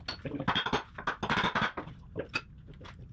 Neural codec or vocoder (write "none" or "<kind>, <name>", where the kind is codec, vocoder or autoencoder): none